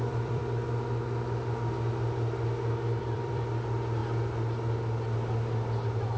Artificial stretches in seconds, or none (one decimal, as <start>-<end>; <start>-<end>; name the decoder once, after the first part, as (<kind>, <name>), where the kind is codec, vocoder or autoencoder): 0.0-0.4 (vocoder, BigVGAN v2); 3.0-4.0